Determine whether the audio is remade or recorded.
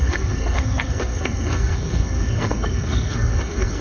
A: remade